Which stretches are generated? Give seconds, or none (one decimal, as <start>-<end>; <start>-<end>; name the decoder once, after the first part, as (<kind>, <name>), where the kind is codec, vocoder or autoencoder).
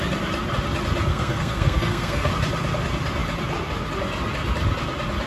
1.1-2.3 (codec, SNAC)